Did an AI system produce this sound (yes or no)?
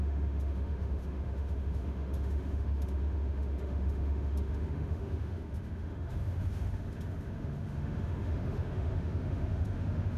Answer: yes